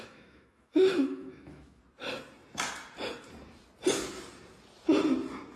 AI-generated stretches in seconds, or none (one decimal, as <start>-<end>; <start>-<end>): 0.0-1.8